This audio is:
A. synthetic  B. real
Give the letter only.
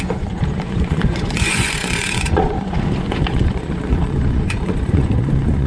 A